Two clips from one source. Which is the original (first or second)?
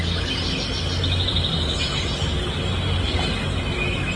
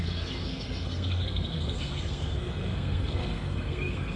first